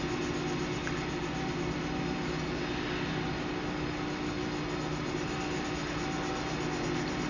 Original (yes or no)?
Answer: yes